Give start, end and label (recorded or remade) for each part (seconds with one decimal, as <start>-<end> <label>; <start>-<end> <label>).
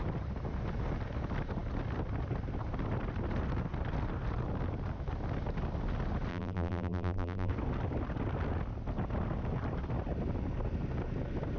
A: 0.0-6.3 recorded; 6.3-7.5 remade; 7.5-11.6 recorded